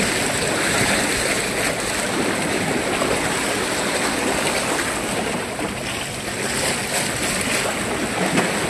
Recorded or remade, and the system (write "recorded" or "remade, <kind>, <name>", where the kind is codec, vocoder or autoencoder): recorded